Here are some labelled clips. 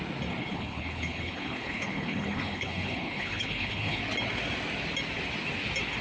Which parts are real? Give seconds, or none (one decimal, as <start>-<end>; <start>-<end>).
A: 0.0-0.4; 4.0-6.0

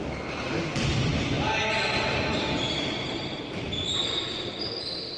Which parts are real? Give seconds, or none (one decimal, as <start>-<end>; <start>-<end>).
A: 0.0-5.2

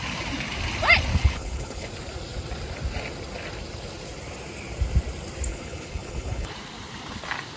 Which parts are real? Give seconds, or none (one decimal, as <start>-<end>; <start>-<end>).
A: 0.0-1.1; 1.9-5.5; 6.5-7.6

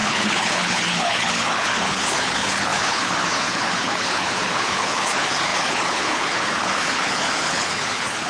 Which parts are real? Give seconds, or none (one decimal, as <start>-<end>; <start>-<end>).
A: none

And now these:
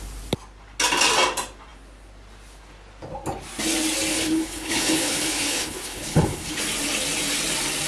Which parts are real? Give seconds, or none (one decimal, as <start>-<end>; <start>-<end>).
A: 0.0-4.1; 6.6-7.9

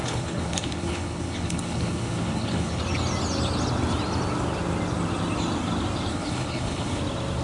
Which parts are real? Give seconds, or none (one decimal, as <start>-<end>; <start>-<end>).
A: 2.8-6.1; 7.0-7.4

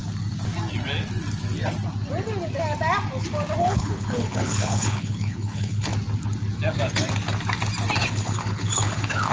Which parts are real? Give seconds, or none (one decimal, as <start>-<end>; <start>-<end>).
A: 0.0-3.6; 5.9-8.0